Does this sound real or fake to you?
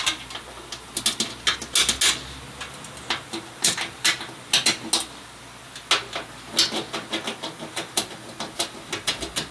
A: real